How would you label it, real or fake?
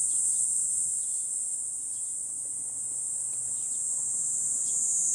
real